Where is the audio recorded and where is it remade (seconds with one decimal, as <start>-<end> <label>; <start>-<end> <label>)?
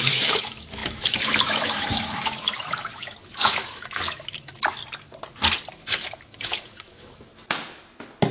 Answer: 0.0-4.8 remade; 4.8-5.7 recorded; 5.7-7.3 remade; 7.3-8.3 recorded